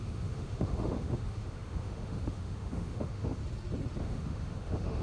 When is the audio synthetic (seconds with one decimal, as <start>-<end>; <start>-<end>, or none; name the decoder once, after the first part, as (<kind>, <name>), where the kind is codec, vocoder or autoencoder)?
0.0-3.4 (autoencoder, DAC-VAE); 4.0-5.0